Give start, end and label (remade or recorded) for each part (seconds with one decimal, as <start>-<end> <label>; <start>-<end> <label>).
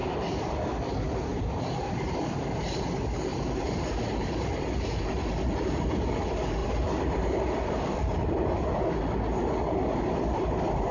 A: 0.0-1.6 remade; 1.6-3.3 recorded; 3.3-5.8 remade; 5.8-6.6 recorded; 6.6-8.6 remade; 8.6-10.9 recorded